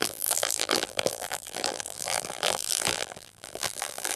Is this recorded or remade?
remade